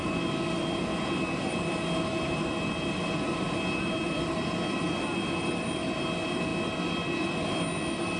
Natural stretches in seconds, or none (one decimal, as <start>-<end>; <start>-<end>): 0.0-8.2